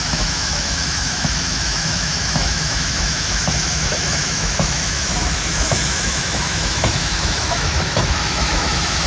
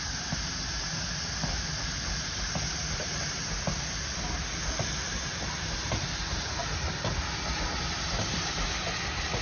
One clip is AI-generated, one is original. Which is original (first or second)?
second